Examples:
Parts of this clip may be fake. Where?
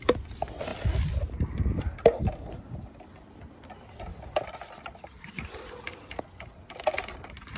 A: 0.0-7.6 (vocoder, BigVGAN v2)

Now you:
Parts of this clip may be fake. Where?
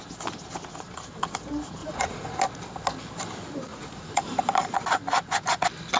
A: 1.8-2.4 (vocoder, Vocos); 3.7-4.2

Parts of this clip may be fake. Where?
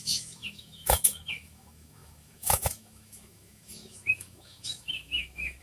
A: 0.0-5.6 (autoencoder, DAC-VAE)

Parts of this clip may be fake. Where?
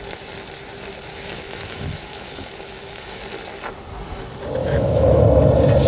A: 1.1-3.2 (autoencoder, DAC-VAE); 4.6-5.2